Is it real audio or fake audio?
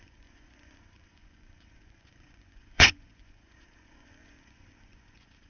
fake